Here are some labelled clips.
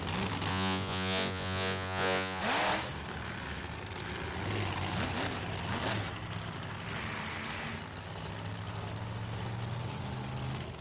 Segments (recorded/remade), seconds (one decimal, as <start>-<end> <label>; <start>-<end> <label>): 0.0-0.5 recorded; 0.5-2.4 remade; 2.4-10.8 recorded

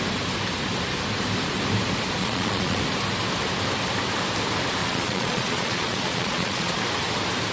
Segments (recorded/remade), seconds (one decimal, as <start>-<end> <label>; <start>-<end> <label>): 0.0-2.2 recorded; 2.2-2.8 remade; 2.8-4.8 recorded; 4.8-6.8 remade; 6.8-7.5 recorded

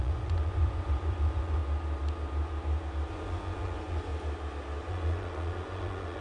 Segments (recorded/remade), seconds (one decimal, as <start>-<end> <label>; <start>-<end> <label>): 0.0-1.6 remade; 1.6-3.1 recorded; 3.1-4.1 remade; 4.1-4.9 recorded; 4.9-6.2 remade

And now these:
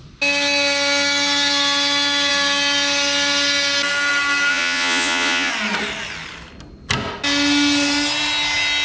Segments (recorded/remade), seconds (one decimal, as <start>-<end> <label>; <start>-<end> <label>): 0.0-4.5 recorded; 4.5-5.5 remade; 5.5-8.8 recorded

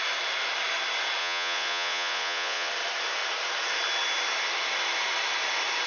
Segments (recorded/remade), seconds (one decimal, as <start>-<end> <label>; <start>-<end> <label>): 0.0-1.2 recorded; 1.2-2.7 remade; 2.7-5.9 recorded